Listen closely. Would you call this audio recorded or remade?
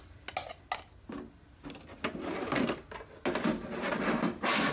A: recorded